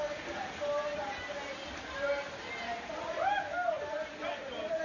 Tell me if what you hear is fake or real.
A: real